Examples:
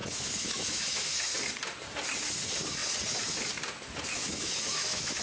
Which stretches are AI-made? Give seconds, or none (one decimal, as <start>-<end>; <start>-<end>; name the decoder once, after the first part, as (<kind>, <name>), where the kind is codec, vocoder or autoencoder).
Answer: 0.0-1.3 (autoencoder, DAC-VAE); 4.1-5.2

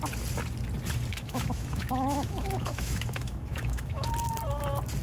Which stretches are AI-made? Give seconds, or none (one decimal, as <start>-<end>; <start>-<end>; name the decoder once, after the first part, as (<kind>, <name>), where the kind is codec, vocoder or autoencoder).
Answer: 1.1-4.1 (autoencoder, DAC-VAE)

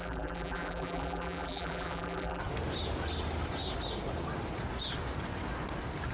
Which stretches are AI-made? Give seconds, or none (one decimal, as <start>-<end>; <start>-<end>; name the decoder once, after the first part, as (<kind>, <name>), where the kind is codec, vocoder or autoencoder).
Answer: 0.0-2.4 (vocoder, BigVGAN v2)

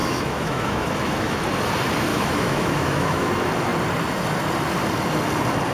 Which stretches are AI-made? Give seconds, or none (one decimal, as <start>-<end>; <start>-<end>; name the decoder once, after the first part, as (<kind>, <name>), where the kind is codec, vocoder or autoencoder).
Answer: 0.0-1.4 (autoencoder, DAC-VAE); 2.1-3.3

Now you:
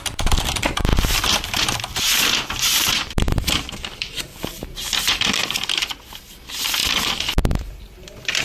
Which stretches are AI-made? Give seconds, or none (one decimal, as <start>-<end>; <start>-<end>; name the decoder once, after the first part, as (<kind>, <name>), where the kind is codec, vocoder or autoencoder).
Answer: 0.0-0.9 (vocoder, BigVGAN v2); 2.5-5.4; 6.3-6.8; 7.4-8.4

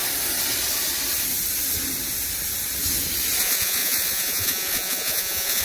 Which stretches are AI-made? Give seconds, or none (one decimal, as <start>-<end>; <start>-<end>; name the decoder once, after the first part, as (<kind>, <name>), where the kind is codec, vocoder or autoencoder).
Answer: 3.4-5.6 (vocoder, Vocos)

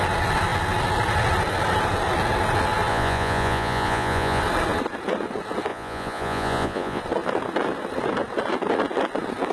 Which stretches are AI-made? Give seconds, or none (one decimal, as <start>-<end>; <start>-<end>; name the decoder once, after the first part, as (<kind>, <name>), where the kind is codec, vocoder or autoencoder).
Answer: 2.9-4.4 (vocoder, Vocos); 5.7-7.0

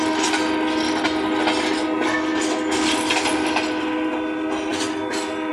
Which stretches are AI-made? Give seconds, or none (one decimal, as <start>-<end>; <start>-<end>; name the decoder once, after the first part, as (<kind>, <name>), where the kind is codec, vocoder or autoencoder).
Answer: none